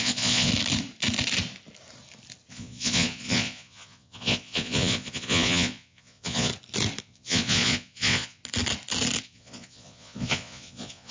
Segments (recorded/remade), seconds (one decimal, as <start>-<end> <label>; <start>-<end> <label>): 0.0-0.5 remade; 0.5-2.5 recorded; 2.5-6.5 remade; 6.5-7.0 recorded; 7.0-8.4 remade; 8.4-9.2 recorded; 9.2-11.1 remade